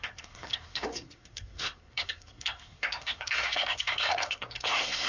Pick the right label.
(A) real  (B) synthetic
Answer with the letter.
B